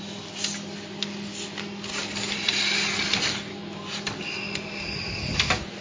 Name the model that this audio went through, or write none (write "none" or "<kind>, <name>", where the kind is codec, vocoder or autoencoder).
none